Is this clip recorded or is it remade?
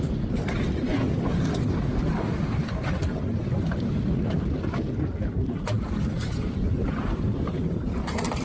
recorded